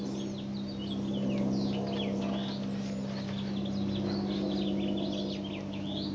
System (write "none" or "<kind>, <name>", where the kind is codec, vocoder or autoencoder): none